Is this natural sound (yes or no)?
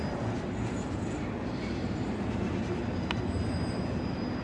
yes